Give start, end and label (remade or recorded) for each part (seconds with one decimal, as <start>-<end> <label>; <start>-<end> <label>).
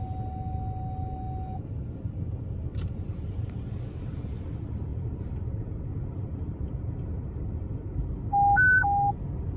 0.0-2.7 recorded; 2.7-4.4 remade; 4.4-4.9 recorded; 4.9-8.1 remade; 8.1-9.6 recorded